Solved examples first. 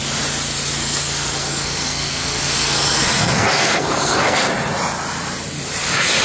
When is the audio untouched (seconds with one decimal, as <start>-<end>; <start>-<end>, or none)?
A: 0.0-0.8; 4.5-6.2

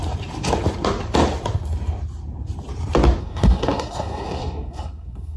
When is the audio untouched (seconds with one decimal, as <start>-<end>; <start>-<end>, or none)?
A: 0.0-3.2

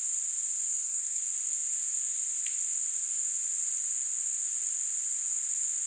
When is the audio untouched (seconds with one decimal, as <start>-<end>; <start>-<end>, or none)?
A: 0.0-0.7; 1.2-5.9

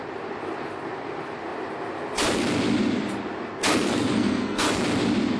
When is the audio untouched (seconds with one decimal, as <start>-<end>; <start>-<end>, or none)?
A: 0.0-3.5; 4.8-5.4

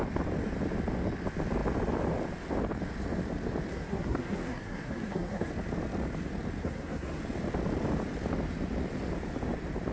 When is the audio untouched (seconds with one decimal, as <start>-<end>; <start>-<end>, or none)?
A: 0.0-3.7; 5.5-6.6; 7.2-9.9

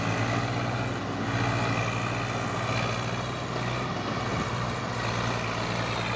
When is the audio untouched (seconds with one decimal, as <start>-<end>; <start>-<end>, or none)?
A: 0.0-6.2